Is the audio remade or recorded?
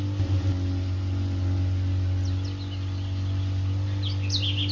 recorded